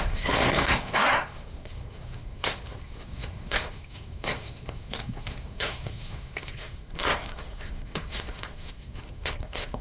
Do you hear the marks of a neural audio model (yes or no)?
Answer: yes